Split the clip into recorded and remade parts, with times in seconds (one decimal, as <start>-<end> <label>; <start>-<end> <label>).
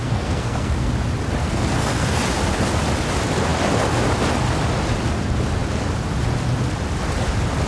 0.0-0.9 remade; 0.9-1.4 recorded; 1.4-2.2 remade; 2.2-7.7 recorded